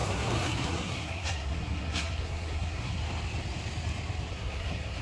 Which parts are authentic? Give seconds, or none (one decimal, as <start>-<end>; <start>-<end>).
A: 3.0-4.3